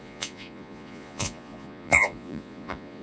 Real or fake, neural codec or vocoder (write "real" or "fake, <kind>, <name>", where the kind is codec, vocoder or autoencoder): fake, vocoder, Vocos